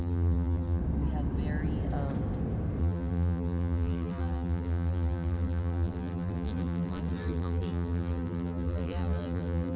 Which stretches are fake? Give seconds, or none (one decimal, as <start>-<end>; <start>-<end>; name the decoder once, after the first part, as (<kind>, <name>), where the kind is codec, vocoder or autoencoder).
0.0-0.8 (vocoder, BigVGAN v2); 2.8-9.8

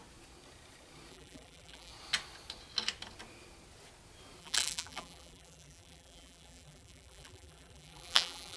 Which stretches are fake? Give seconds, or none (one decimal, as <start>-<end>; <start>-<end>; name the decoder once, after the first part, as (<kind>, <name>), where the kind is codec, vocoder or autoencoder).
1.1-1.9 (vocoder, BigVGAN v2); 4.4-8.6